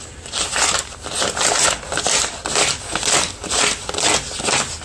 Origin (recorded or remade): recorded